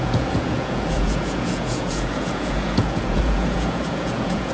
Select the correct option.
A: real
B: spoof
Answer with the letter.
B